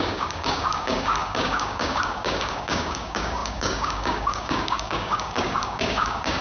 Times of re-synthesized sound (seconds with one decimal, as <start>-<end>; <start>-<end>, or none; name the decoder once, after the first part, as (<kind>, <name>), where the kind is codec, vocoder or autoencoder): 0.0-6.4 (codec, DAC)